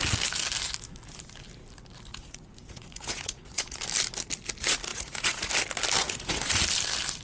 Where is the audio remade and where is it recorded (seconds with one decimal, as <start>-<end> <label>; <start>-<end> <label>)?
0.0-2.1 recorded; 2.1-3.8 remade; 3.8-4.9 recorded; 4.9-5.5 remade; 5.5-6.0 recorded; 6.0-6.6 remade; 6.6-7.2 recorded